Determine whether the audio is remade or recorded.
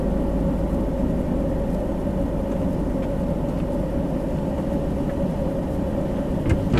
recorded